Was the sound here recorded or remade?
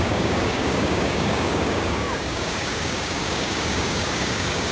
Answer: remade